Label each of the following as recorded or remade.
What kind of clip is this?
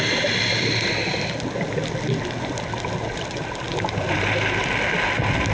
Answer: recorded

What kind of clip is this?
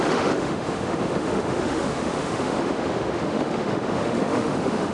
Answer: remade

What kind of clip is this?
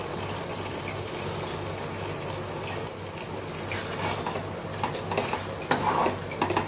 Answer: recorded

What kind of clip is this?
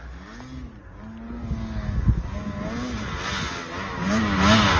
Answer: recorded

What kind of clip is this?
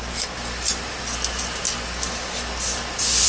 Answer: recorded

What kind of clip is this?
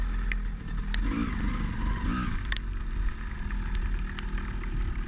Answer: recorded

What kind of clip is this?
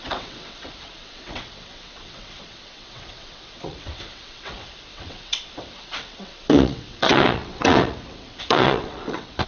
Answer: remade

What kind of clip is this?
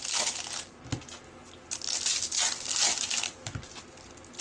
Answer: recorded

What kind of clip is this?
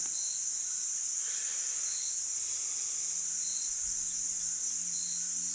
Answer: recorded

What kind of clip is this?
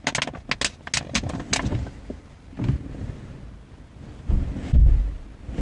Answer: recorded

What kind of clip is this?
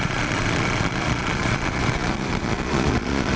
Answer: remade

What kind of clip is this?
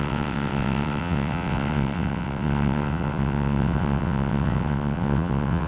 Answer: remade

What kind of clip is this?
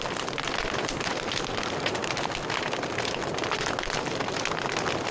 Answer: recorded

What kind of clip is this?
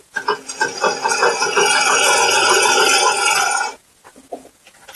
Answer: remade